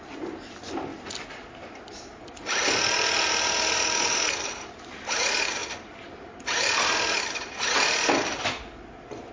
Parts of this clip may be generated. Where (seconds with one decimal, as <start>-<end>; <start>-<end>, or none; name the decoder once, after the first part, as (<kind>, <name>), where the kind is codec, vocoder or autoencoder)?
none

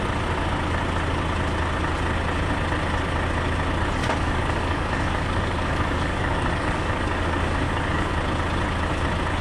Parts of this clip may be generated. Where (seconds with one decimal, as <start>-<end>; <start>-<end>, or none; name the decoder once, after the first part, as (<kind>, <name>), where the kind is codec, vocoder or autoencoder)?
4.0-8.1 (codec, DAC)

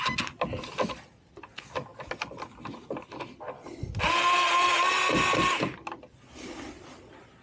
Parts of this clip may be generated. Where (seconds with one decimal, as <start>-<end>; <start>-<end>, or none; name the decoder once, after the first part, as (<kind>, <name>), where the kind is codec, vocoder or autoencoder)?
none

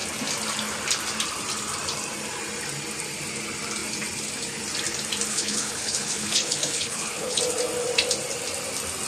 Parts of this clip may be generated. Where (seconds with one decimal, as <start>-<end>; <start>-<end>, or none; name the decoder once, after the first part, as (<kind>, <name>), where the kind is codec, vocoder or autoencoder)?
5.3-7.4 (codec, HILCodec)

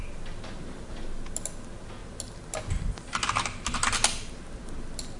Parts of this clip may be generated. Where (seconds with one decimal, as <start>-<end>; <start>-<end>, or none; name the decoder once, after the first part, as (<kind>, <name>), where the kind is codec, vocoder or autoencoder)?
none

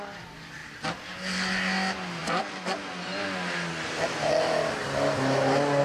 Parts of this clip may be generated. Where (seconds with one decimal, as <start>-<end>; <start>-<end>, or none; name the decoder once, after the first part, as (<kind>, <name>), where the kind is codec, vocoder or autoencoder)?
none

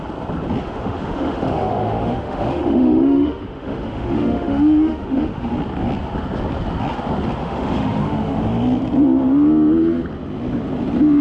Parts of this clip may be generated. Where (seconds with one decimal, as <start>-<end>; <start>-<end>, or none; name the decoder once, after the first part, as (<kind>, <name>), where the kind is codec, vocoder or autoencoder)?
0.6-5.5 (autoencoder, DAC-VAE); 7.4-8.4

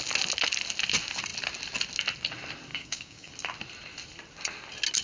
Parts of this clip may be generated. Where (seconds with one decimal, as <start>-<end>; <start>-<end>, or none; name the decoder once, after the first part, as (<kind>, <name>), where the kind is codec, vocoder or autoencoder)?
2.7-3.3 (codec, DAC)